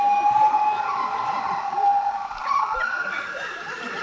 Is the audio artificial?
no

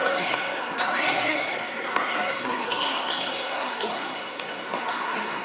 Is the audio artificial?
yes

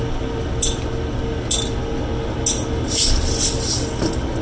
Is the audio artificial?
no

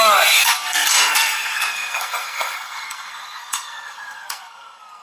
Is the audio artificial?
yes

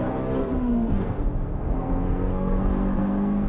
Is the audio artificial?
yes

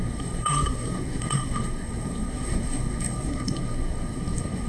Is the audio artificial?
yes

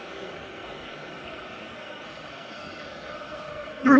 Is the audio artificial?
yes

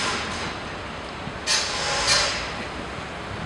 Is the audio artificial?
no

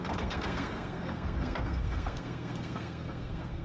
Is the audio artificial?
yes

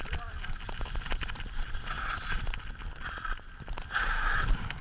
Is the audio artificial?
no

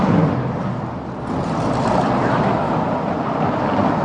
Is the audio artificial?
no